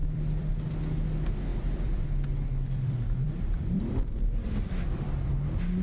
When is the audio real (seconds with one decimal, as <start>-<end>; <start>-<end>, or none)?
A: 0.5-1.5; 5.0-5.8

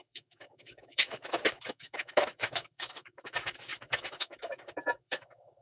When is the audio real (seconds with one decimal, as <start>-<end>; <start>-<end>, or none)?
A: none

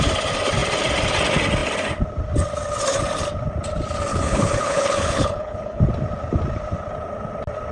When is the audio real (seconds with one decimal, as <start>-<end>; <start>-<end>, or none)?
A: 0.0-4.1; 5.8-7.7

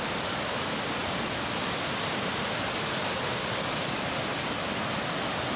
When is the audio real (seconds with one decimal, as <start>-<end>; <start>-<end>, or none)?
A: 0.0-1.0; 2.3-5.6

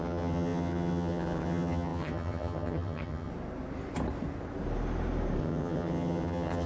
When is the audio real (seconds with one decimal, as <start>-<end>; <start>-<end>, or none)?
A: 3.3-5.4

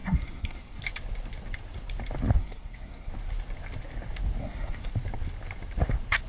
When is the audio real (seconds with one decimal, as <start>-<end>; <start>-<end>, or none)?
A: 0.8-2.4; 3.1-4.4; 4.9-6.3

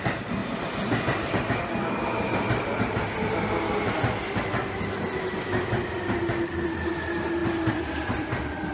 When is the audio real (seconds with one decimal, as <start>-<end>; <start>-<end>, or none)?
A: 0.0-0.4; 1.3-7.4

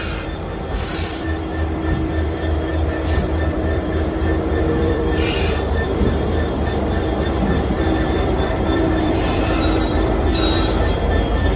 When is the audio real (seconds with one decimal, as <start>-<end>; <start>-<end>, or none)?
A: none